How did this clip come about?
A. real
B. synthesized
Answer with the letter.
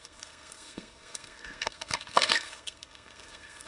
B